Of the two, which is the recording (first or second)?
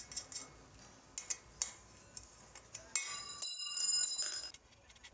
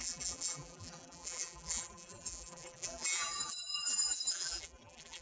first